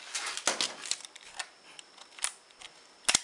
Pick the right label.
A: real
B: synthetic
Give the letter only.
A